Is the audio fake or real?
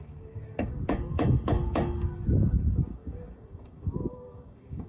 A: fake